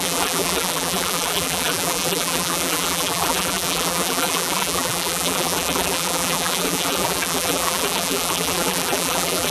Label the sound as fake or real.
fake